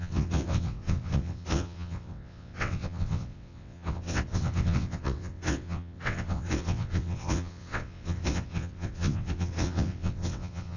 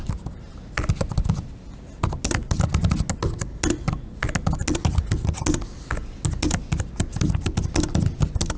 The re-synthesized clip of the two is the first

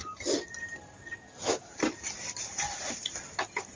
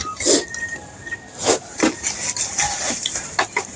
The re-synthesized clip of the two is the second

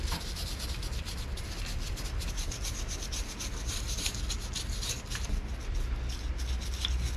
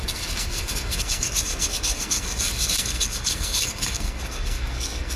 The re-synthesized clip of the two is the second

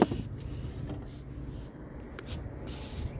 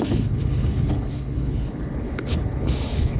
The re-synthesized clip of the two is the second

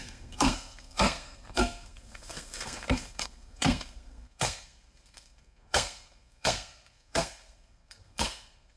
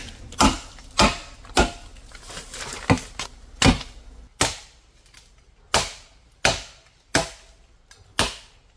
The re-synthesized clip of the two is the first